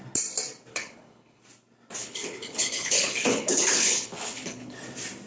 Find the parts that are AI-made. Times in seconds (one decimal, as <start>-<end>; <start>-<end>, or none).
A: 0.7-1.4; 2.0-4.8